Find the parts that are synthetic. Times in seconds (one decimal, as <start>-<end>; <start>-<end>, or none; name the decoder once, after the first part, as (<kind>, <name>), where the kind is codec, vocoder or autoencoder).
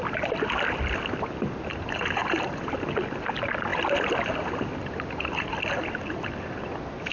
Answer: none